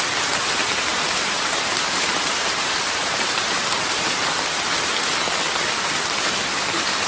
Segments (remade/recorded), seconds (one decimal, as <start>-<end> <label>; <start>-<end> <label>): 0.0-0.9 recorded; 0.9-4.3 remade; 4.3-7.1 recorded